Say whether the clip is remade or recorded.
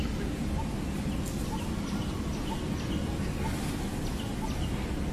recorded